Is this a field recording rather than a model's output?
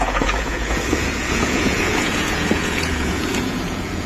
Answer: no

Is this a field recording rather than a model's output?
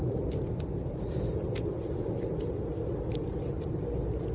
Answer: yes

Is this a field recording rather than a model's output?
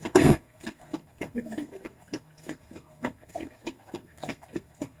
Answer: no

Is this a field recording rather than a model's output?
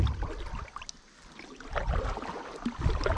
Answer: yes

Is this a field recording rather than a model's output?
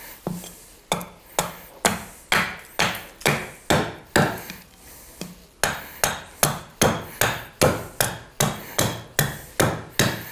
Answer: yes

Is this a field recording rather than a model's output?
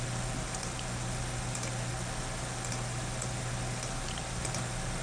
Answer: yes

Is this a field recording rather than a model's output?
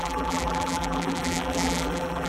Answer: no